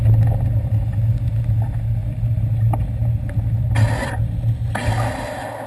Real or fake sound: real